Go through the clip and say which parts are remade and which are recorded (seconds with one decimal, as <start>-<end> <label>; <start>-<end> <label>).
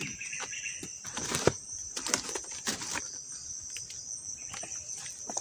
0.0-0.9 recorded; 0.9-3.0 remade; 3.0-3.4 recorded; 3.4-4.0 remade; 4.0-5.4 recorded